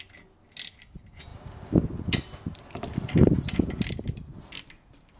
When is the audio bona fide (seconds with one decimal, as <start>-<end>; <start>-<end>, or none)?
0.0-1.3; 3.5-5.2